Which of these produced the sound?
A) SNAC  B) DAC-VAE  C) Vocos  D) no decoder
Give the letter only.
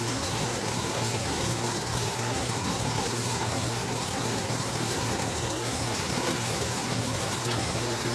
A